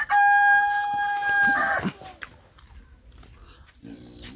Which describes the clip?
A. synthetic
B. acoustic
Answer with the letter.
B